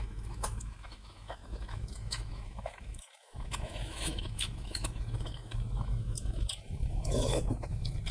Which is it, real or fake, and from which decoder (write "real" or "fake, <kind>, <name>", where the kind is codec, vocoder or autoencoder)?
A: fake, autoencoder, DAC-VAE